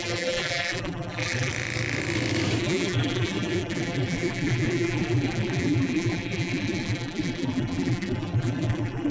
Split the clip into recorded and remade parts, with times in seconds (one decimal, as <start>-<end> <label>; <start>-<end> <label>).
0.0-1.5 remade; 1.5-2.6 recorded; 2.6-9.1 remade